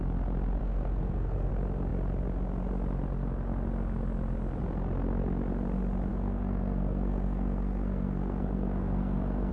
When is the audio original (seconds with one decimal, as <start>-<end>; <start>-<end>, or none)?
0.0-0.6; 1.5-6.1